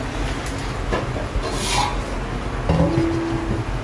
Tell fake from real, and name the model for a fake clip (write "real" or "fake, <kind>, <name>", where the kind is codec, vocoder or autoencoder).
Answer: real